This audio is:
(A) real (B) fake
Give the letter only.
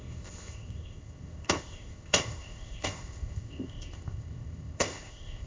B